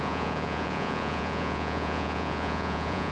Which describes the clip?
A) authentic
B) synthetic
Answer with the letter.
B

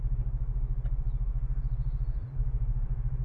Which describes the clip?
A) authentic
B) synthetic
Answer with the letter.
B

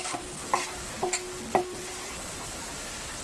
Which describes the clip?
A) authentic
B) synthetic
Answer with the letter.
A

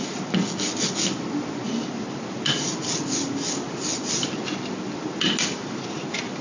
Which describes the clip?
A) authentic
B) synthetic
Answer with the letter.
A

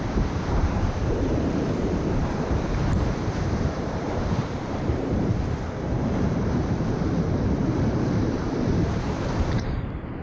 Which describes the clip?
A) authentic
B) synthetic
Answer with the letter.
B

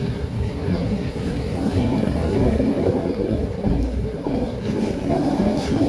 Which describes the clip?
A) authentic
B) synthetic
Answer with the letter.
B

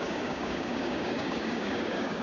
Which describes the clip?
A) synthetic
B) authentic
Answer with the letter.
A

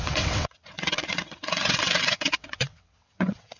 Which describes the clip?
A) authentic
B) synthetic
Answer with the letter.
B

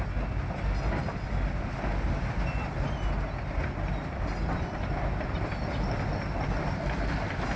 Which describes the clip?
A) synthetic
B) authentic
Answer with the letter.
B